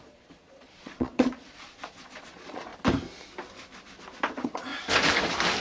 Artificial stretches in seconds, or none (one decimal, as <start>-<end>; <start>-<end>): 0.0-2.7; 4.3-4.7